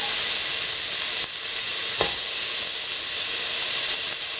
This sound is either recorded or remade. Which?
recorded